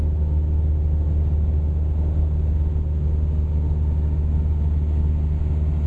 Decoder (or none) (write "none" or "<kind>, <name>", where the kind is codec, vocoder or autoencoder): none